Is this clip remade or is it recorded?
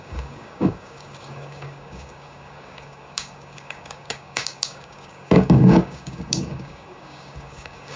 remade